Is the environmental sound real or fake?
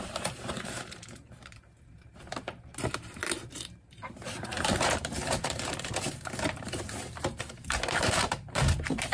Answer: fake